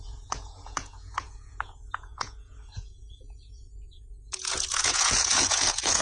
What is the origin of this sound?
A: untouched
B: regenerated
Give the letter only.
B